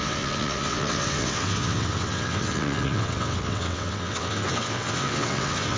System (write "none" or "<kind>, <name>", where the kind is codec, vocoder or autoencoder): vocoder, WaveNeXt